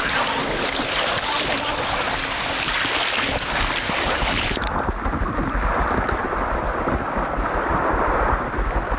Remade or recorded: recorded